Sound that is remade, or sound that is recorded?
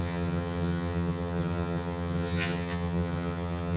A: remade